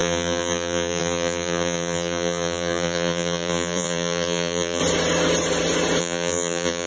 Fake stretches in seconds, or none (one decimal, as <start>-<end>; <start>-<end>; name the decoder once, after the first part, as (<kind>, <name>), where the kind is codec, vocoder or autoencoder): 0.0-4.8 (vocoder, BigVGAN v2); 6.0-6.9